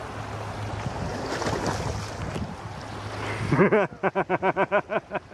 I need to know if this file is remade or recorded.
recorded